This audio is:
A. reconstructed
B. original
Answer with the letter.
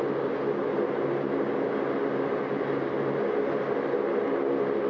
B